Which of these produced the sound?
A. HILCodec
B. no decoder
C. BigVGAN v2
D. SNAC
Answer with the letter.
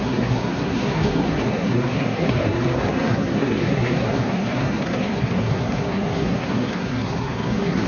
D